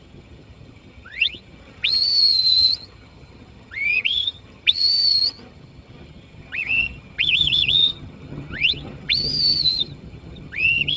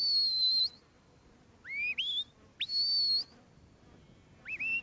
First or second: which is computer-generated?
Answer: first